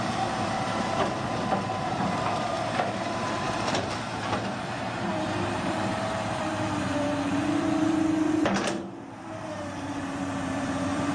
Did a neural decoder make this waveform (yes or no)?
yes